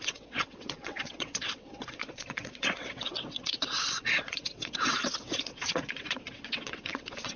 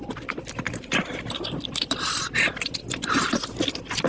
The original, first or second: second